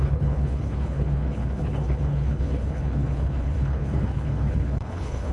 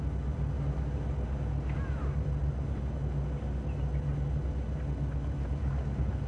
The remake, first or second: first